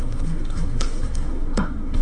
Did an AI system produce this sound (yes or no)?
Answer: yes